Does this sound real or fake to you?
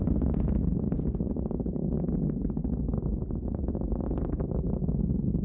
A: real